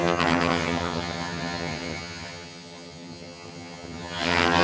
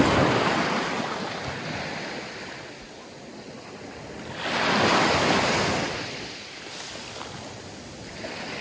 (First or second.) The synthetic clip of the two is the first